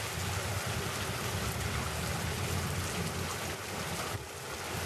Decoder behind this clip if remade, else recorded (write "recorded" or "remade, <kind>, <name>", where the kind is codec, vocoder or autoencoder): recorded